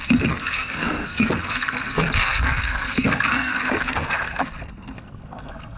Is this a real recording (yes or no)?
no